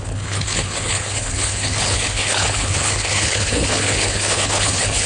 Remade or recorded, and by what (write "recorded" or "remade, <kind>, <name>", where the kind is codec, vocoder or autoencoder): remade, codec, HILCodec